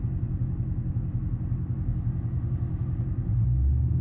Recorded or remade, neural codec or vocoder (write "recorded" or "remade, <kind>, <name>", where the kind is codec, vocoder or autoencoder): recorded